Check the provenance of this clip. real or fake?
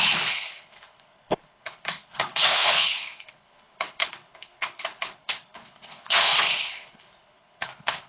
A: fake